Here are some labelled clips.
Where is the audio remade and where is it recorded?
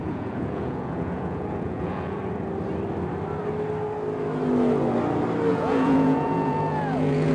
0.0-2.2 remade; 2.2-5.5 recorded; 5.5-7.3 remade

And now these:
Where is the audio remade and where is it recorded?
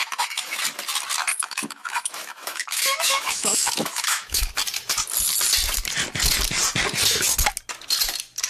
0.0-0.6 remade; 0.6-1.3 recorded; 1.3-4.5 remade; 4.5-8.5 recorded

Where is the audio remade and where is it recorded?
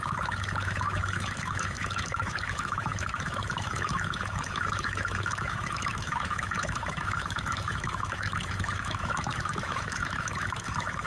0.0-11.1 remade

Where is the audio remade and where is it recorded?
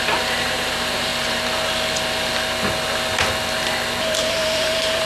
0.0-1.1 remade; 1.1-4.0 recorded; 4.0-5.1 remade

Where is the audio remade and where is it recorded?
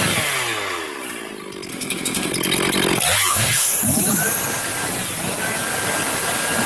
0.0-1.7 recorded; 1.7-2.3 remade; 2.3-3.3 recorded; 3.3-3.8 remade; 3.8-6.7 recorded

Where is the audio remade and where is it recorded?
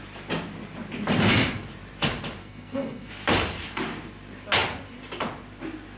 0.0-2.4 recorded; 2.4-3.1 remade; 3.1-6.0 recorded